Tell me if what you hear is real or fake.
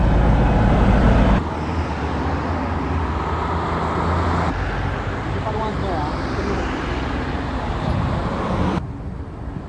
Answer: real